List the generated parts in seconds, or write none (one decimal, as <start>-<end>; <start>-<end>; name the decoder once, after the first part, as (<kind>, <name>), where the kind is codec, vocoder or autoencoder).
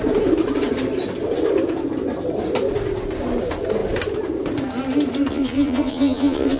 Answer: 5.3-6.6 (vocoder, Vocos)